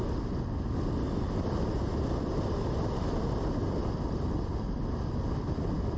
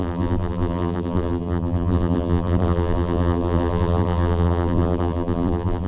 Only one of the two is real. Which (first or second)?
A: first